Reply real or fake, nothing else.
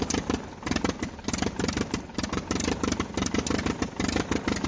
real